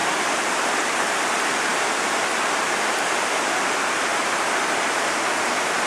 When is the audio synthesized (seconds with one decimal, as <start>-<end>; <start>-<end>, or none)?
0.0-0.7; 4.1-4.9